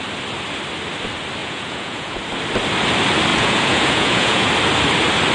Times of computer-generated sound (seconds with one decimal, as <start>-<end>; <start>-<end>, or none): 1.4-2.2; 3.3-4.5